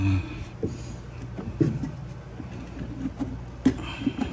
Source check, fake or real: real